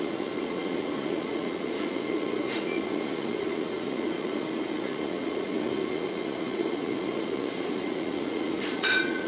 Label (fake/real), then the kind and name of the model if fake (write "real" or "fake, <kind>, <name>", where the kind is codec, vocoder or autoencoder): fake, vocoder, Vocos